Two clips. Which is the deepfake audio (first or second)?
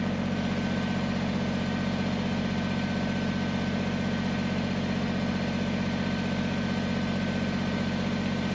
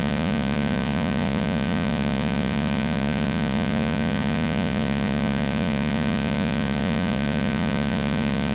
second